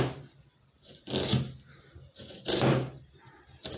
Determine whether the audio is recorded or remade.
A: recorded